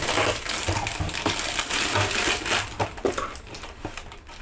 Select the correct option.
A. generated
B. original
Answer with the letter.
B